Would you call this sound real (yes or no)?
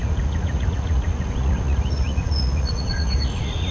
no